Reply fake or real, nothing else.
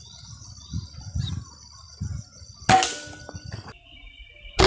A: real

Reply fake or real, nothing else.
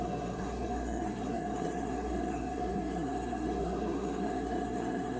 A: fake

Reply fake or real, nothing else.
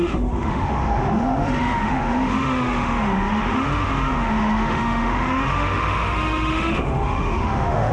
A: fake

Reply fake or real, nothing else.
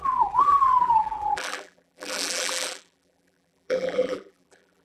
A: fake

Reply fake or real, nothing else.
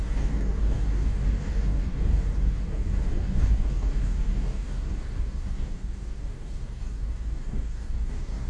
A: fake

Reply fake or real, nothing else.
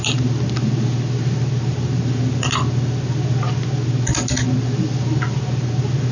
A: real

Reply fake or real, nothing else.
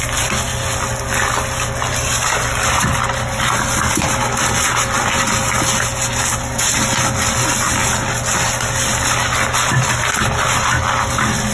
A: real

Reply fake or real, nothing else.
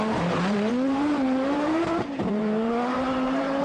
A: fake